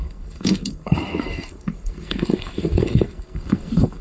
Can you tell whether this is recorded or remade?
remade